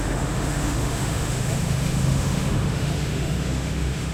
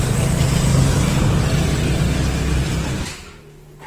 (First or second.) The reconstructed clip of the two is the first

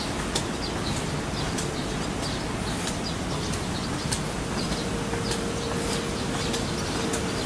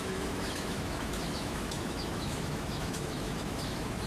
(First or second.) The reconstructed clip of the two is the second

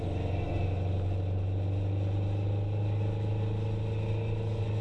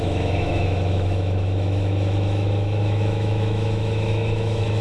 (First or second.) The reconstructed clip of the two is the second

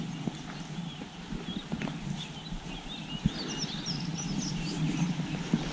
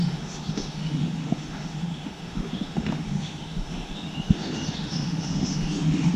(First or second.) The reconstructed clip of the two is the second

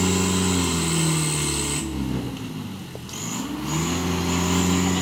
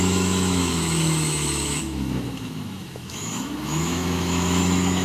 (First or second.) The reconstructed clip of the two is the second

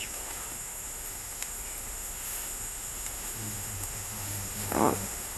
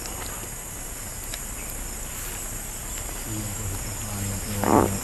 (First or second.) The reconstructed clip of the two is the first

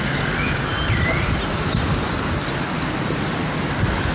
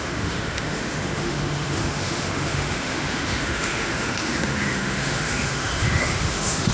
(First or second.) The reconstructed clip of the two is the second